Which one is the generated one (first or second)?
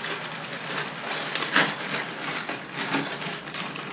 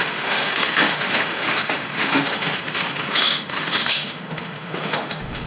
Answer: second